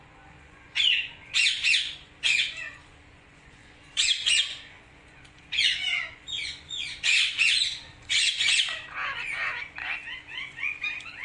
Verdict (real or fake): fake